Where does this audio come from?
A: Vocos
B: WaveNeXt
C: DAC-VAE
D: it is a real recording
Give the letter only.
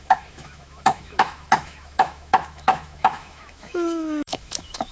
C